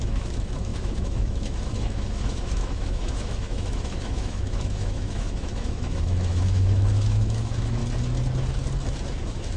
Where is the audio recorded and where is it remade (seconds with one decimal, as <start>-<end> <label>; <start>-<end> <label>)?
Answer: 0.0-7.8 remade; 7.8-9.2 recorded; 9.2-9.6 remade